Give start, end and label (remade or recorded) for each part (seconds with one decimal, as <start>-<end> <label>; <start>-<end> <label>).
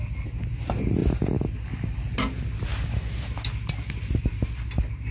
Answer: 0.0-5.1 recorded